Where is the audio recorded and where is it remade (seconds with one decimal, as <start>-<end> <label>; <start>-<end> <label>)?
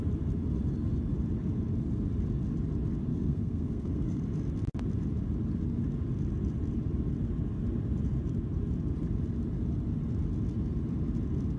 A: 0.0-3.1 recorded; 3.1-4.2 remade; 4.2-11.6 recorded